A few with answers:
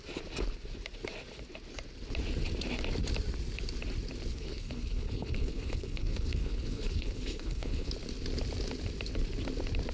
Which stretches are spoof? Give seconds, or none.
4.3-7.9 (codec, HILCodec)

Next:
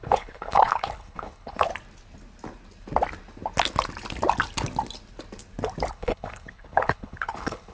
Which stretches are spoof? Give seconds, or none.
0.0-1.7 (codec, HILCodec); 5.9-7.7

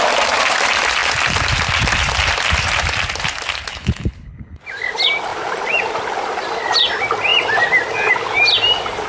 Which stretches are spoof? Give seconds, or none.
3.7-4.6 (codec, HILCodec)

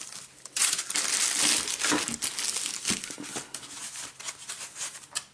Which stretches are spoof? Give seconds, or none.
none

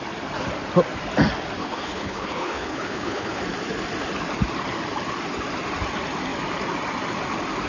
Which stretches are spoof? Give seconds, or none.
1.6-3.4 (codec, HILCodec)

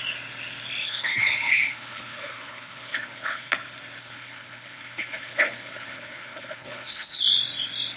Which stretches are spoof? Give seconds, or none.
0.8-3.5 (codec, HILCodec); 4.0-7.2

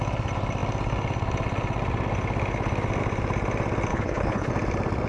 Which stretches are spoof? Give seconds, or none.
3.9-4.5 (codec, HILCodec)